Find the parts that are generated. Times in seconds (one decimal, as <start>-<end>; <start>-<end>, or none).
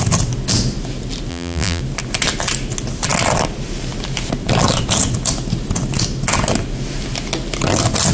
1.3-1.8